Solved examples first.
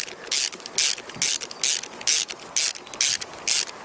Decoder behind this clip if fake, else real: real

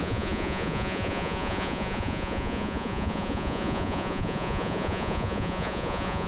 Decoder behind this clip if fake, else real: fake, vocoder, Vocos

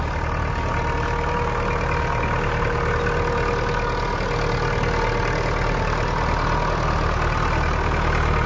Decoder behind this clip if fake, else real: real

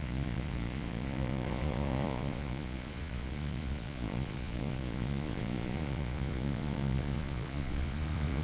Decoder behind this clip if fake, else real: fake, vocoder, Vocos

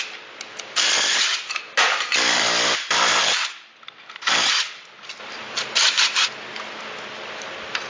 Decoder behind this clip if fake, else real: real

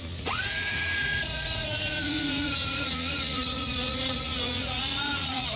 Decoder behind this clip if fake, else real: fake, vocoder, Vocos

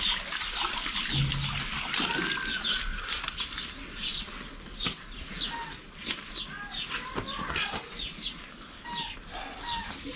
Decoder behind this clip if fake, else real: real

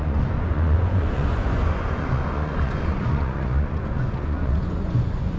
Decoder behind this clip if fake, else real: fake, vocoder, Vocos